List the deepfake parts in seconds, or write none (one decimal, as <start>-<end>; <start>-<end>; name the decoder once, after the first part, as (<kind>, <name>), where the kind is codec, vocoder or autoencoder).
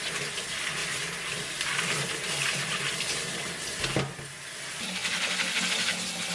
none